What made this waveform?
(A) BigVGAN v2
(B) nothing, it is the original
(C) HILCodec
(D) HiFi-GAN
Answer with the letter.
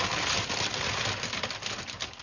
B